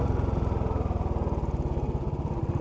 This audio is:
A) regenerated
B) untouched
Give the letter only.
B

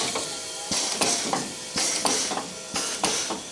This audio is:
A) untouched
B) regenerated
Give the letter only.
A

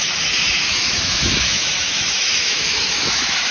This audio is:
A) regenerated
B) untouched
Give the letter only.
A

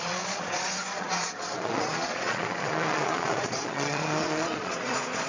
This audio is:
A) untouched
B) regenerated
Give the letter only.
B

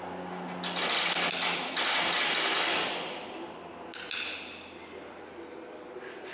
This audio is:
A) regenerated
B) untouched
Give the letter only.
B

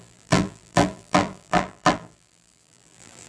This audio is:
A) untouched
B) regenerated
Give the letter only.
B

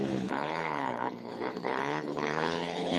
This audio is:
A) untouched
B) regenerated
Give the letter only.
B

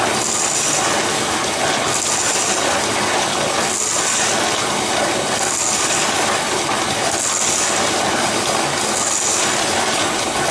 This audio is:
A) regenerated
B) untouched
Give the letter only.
B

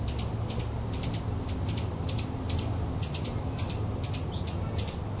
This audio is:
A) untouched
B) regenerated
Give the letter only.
A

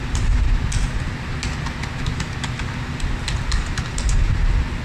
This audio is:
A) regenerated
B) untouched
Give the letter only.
B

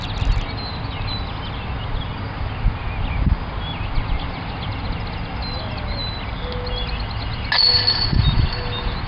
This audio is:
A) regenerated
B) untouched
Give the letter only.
B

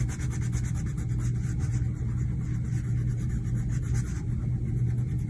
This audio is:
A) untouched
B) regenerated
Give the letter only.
A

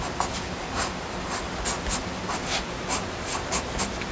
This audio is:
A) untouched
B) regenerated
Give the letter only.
A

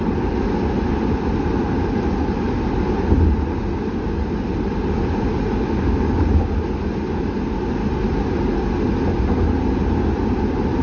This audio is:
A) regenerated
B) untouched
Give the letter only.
B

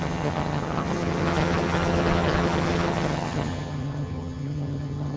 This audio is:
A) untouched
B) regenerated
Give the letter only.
B